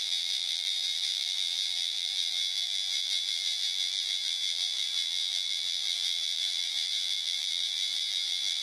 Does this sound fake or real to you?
fake